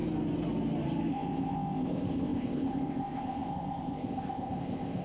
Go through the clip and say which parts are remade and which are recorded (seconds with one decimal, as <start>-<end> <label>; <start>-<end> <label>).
0.0-1.1 recorded; 1.1-5.0 remade